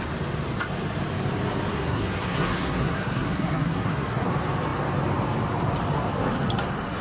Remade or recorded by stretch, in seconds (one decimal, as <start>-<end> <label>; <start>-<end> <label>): 0.0-1.7 recorded; 1.7-4.3 remade; 4.3-7.0 recorded